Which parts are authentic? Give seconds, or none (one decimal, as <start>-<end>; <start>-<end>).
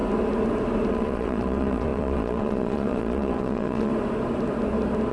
0.0-0.9; 3.9-5.1